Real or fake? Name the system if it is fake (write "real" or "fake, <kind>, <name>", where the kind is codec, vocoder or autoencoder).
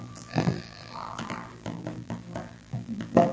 fake, vocoder, BigVGAN v2